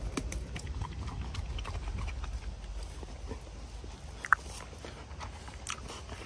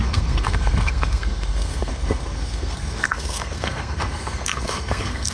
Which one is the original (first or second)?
first